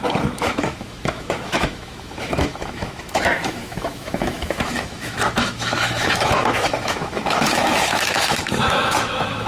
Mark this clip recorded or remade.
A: remade